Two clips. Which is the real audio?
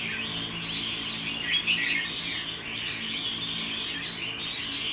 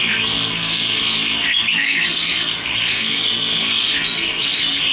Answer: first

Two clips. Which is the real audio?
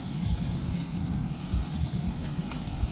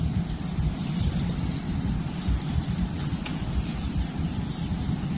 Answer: second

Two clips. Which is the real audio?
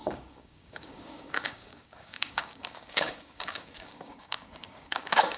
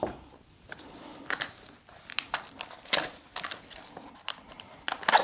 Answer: second